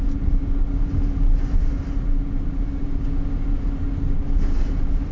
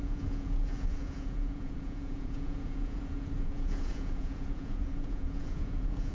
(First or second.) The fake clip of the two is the second